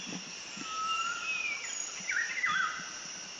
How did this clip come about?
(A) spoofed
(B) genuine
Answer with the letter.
A